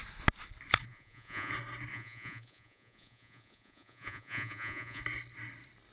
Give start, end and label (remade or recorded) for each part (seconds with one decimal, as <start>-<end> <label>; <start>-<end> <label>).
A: 0.0-0.9 recorded; 0.9-1.5 remade; 1.5-1.9 recorded; 1.9-5.0 remade; 5.0-5.9 recorded